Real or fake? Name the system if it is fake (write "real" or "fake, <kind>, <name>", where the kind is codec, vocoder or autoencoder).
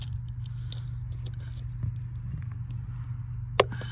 real